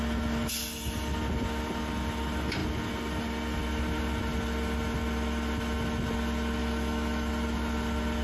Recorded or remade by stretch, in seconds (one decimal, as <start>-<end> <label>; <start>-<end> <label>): 0.0-6.6 recorded; 6.6-7.3 remade; 7.3-8.2 recorded